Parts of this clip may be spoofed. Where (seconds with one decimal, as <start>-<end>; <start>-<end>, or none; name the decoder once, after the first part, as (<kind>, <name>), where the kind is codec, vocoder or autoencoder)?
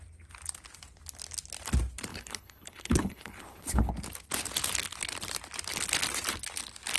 2.1-3.9 (codec, HILCodec)